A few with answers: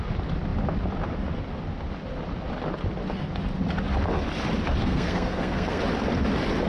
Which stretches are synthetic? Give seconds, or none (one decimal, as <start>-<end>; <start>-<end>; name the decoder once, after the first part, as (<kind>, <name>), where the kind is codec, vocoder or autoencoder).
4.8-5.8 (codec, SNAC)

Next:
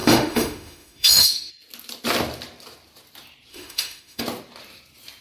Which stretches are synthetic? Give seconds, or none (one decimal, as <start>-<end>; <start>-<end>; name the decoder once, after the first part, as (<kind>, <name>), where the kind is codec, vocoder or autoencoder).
0.0-1.5 (autoencoder, DAC-VAE); 3.5-4.2

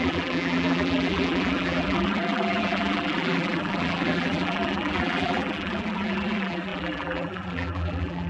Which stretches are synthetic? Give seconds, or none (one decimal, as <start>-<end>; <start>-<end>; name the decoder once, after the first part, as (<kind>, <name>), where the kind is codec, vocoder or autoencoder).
0.0-8.3 (vocoder, BigVGAN v2)

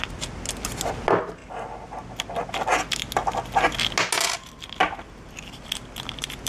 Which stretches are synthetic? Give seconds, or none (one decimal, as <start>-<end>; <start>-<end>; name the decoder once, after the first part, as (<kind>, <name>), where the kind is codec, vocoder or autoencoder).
none

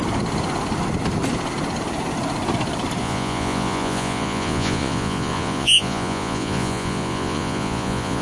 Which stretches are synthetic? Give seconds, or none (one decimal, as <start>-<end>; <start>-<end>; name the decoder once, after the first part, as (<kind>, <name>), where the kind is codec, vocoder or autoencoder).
3.0-8.2 (vocoder, Vocos)

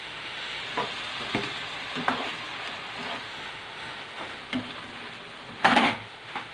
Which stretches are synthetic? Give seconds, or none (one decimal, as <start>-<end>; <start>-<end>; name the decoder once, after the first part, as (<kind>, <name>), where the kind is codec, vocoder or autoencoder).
0.0-0.6 (autoencoder, DAC-VAE); 3.3-4.4; 5.6-6.5